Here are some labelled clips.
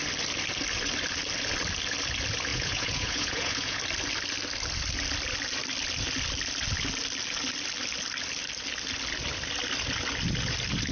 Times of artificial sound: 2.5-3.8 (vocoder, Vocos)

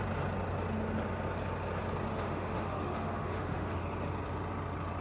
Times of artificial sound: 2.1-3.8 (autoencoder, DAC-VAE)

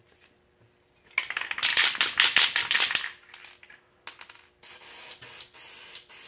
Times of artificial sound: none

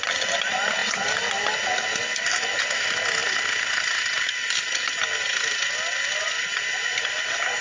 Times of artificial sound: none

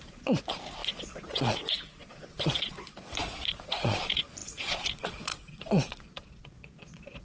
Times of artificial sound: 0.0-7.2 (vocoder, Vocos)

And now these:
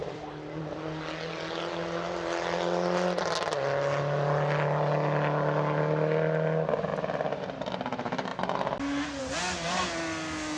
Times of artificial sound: 0.0-0.8 (vocoder, BigVGAN v2); 6.9-7.7

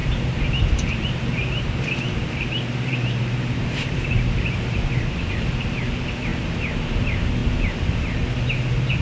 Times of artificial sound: 0.0-5.3 (vocoder, BigVGAN v2); 6.3-7.0; 7.4-8.3

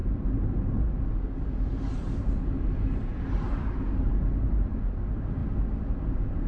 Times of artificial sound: 0.0-5.4 (vocoder, BigVGAN v2); 5.9-6.5